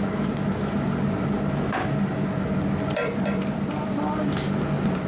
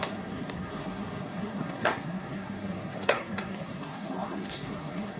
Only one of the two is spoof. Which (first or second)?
second